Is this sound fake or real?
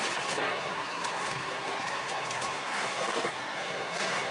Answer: fake